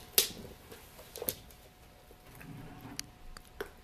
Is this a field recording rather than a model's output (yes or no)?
yes